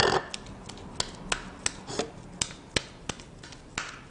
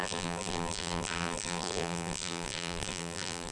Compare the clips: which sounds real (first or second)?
first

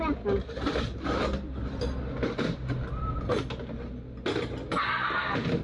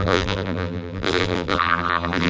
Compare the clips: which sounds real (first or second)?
first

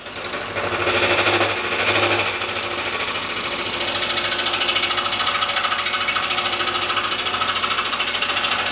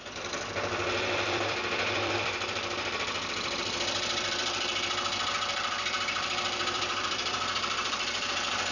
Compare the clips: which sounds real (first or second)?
first